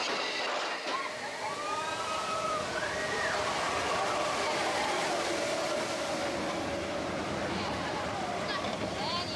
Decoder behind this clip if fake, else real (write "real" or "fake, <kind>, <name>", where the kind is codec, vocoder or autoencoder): real